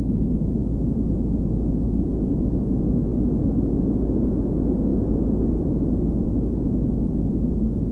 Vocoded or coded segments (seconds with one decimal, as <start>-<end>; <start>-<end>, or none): none